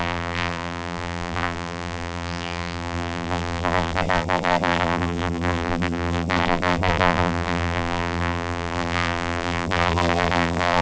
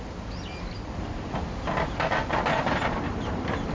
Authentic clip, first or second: second